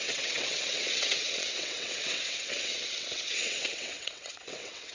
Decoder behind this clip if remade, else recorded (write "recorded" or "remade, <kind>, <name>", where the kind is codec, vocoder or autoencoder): remade, vocoder, WaveNeXt